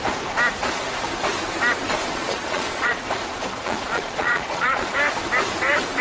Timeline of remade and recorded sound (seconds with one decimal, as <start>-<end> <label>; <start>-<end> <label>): 0.0-2.0 recorded; 2.0-2.9 remade; 2.9-3.6 recorded; 3.6-4.9 remade; 4.9-6.0 recorded